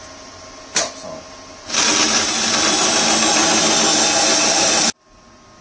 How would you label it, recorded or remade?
recorded